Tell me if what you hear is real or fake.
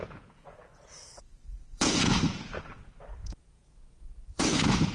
fake